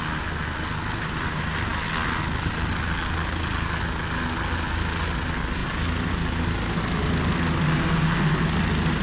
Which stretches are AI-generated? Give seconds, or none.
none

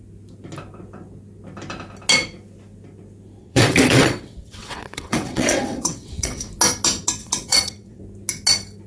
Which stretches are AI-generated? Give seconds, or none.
3.4-6.5; 7.2-8.0

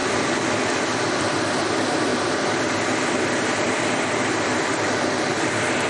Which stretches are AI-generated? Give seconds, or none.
0.8-5.9

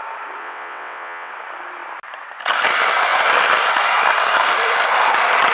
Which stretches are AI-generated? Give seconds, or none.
0.4-1.3

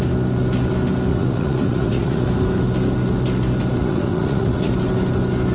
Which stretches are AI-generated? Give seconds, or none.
1.1-2.3; 3.8-4.7

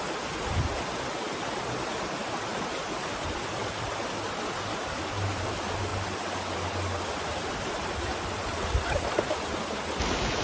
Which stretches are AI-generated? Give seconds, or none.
none

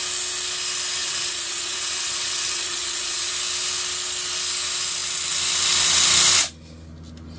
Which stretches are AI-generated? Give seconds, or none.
1.0-3.3